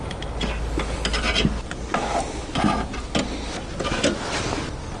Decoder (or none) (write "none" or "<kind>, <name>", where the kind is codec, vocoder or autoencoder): none